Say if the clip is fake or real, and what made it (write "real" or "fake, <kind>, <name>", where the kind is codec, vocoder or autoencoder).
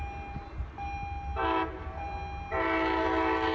real